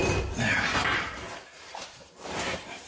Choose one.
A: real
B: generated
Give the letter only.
B